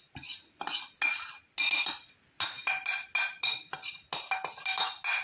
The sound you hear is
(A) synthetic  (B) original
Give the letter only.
B